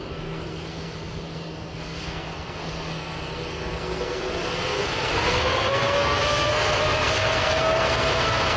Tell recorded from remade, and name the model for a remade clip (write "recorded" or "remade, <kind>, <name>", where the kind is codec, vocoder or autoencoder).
remade, codec, SNAC